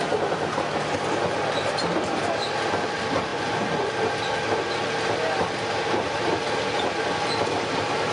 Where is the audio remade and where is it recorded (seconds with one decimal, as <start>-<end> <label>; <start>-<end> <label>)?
0.0-3.3 recorded; 3.3-3.9 remade; 3.9-8.1 recorded